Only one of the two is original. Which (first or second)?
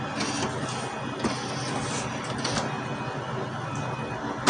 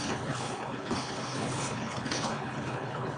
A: first